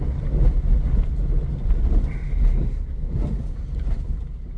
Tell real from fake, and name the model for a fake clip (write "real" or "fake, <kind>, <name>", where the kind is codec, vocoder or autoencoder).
real